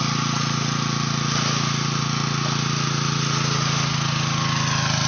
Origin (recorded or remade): recorded